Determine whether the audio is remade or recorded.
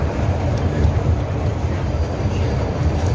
remade